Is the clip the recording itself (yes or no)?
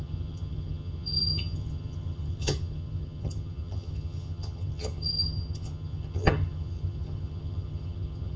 no